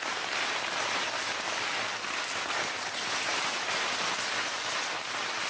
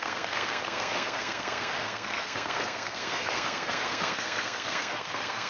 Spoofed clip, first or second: second